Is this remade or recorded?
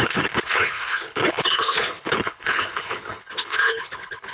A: remade